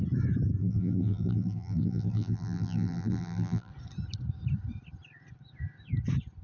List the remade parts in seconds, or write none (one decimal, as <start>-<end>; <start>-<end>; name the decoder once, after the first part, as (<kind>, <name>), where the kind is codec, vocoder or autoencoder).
0.6-3.7 (vocoder, BigVGAN v2)